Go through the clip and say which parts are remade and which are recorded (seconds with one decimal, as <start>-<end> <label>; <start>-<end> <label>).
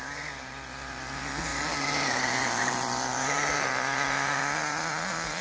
0.0-1.5 recorded; 1.5-4.4 remade; 4.4-5.4 recorded